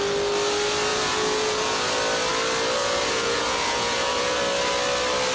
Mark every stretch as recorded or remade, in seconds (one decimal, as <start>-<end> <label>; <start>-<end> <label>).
0.0-0.9 recorded; 0.9-1.9 remade; 1.9-2.8 recorded; 2.8-4.4 remade; 4.4-5.3 recorded